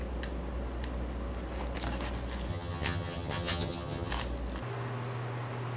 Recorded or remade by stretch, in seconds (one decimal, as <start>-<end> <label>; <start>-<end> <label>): 0.0-2.5 recorded; 2.5-4.1 remade; 4.1-5.8 recorded